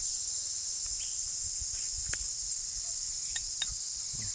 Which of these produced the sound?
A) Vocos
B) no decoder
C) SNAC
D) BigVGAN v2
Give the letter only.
B